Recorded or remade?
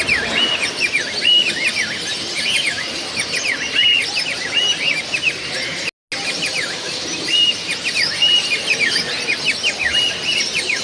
recorded